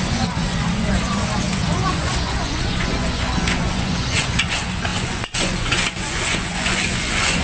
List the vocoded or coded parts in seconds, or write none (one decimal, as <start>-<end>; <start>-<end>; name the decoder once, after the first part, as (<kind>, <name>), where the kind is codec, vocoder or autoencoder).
0.0-7.4 (vocoder, Vocos)